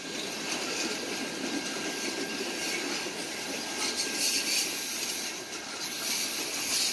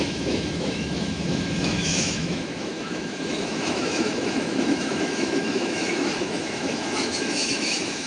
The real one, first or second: first